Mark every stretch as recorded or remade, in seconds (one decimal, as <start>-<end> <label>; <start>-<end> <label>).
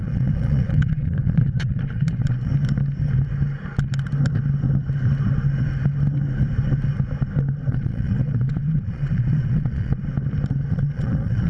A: 0.0-2.5 remade; 2.5-7.7 recorded; 7.7-10.0 remade; 10.0-10.7 recorded; 10.7-11.5 remade